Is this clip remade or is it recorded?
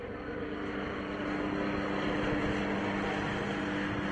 recorded